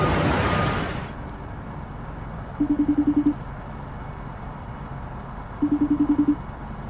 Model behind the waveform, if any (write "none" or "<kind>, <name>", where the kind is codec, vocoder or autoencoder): none